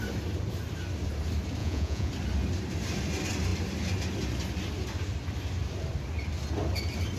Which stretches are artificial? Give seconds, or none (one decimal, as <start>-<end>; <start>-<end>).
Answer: 1.6-2.1